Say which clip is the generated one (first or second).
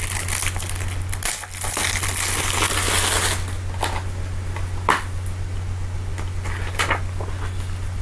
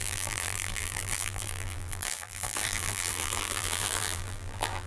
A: second